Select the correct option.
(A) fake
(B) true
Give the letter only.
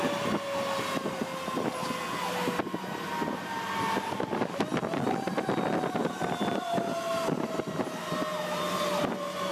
B